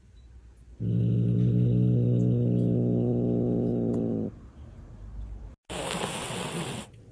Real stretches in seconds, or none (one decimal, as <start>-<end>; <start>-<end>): 0.0-6.2